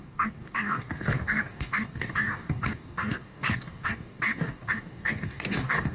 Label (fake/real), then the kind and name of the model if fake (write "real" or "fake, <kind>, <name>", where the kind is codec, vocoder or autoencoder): fake, codec, DAC